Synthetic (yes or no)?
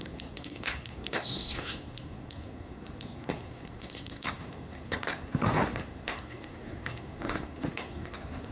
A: yes